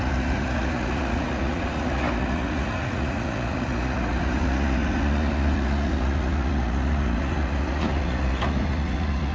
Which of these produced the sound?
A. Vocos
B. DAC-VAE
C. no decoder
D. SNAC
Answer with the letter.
A